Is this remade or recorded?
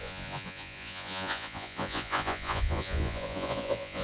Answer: remade